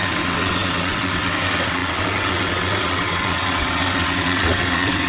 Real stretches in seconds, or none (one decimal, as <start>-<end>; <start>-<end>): none